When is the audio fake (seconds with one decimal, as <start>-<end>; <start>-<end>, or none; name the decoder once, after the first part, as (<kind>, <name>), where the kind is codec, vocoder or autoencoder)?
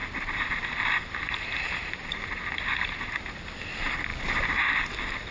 0.0-3.2 (vocoder, BigVGAN v2); 4.1-4.6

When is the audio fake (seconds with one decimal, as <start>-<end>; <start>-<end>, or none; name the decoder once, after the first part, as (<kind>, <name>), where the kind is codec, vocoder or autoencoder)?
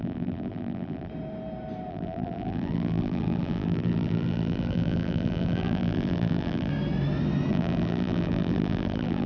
0.0-1.1 (vocoder, BigVGAN v2); 1.9-6.7; 7.5-9.3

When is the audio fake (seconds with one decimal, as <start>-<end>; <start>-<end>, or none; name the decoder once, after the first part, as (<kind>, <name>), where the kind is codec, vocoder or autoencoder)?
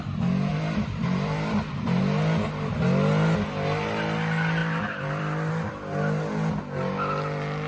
0.5-2.0 (vocoder, BigVGAN v2); 4.6-5.5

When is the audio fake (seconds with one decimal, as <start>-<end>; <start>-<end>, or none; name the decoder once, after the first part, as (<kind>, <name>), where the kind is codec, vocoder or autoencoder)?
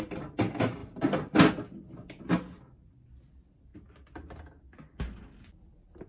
none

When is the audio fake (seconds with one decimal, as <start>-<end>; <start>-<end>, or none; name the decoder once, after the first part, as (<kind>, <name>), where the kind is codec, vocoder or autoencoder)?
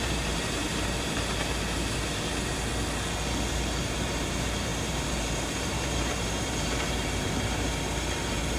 0.0-2.7 (vocoder, BigVGAN v2); 3.5-8.6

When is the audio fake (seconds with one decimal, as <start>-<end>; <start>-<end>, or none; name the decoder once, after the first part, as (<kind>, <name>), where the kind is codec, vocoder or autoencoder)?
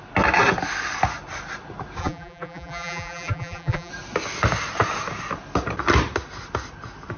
2.0-3.9 (vocoder, BigVGAN v2)